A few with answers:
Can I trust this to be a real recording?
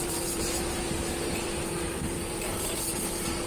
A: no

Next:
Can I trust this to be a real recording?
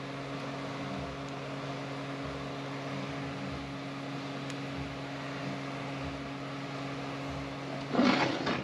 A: yes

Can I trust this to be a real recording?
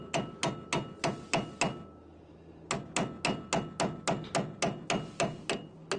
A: yes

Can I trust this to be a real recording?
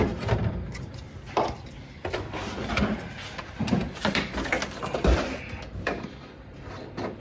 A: no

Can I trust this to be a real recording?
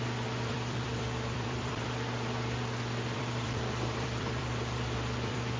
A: no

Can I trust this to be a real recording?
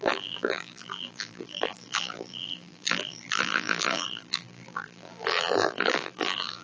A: no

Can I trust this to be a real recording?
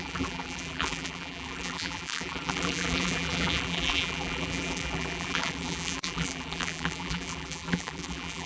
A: no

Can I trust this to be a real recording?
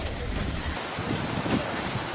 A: no